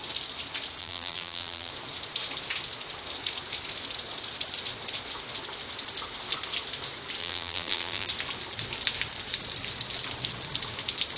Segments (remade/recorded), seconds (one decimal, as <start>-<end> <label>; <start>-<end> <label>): 0.0-0.8 recorded; 0.8-1.7 remade; 1.7-7.2 recorded; 7.2-8.1 remade; 8.1-11.2 recorded